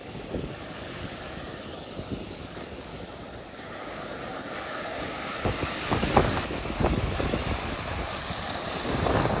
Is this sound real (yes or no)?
no